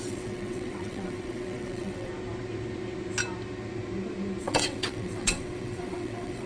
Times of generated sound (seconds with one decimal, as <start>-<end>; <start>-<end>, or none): 0.0-2.1; 4.4-6.5